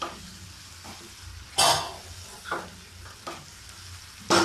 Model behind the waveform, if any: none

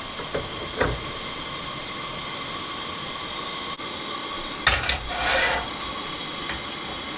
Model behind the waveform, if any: none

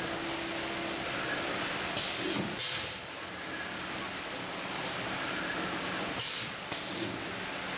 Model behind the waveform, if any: none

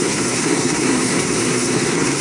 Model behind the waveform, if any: codec, SNAC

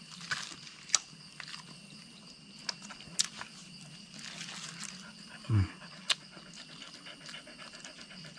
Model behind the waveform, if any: none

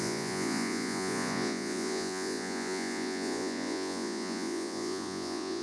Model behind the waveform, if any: vocoder, Vocos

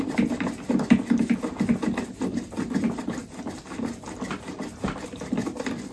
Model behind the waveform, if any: none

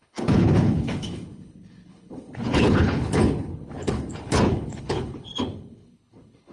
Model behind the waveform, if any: codec, HILCodec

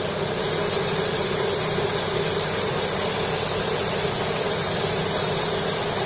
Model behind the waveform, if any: none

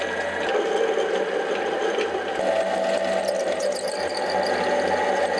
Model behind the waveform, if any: none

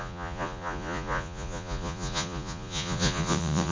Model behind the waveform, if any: vocoder, Vocos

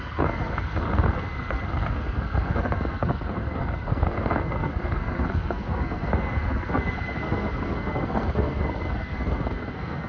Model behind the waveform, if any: codec, SNAC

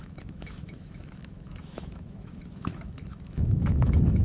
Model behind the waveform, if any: autoencoder, DAC-VAE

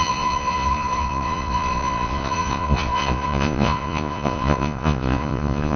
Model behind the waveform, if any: vocoder, Vocos